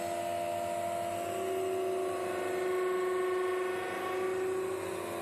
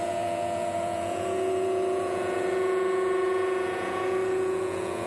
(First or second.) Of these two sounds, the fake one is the second